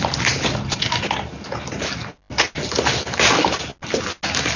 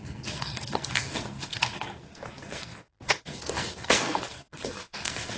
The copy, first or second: second